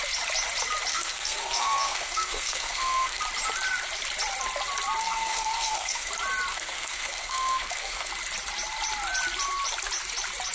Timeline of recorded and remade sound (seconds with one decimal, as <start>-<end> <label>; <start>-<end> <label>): 0.0-0.9 recorded; 0.9-3.2 remade; 3.2-5.0 recorded; 5.0-6.1 remade; 6.1-6.5 recorded; 6.5-8.1 remade; 8.1-10.5 recorded